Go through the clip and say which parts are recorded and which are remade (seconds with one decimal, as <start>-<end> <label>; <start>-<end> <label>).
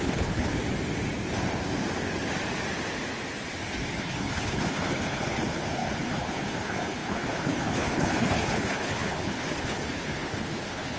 0.0-0.5 remade; 0.5-4.0 recorded; 4.0-11.0 remade